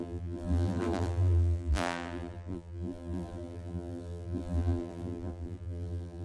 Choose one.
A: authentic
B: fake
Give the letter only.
B